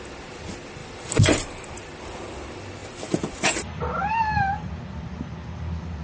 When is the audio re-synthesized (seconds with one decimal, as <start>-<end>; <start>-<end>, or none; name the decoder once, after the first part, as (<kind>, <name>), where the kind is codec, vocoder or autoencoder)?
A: 0.8-1.7 (vocoder, BigVGAN v2); 2.8-3.5; 4.0-4.7